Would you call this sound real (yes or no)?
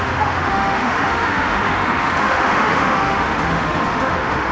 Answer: no